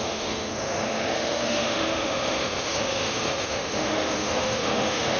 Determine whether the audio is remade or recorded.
remade